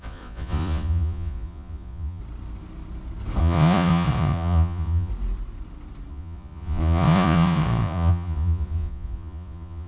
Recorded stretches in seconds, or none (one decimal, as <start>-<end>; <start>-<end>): 2.2-3.4; 5.1-6.1